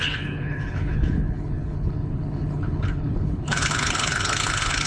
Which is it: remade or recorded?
remade